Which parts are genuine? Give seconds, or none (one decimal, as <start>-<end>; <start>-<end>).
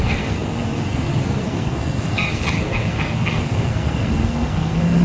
none